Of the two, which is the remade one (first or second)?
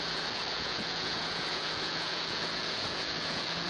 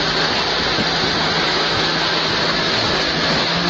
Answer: first